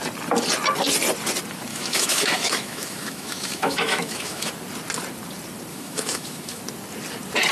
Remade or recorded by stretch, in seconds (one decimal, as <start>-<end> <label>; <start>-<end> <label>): 0.0-1.7 recorded; 1.7-4.5 remade; 4.5-5.7 recorded; 5.7-6.6 remade; 6.6-7.5 recorded